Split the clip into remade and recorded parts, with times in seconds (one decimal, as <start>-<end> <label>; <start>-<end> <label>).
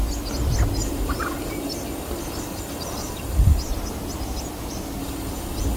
0.0-0.8 recorded; 0.8-3.6 remade; 3.6-5.0 recorded; 5.0-5.8 remade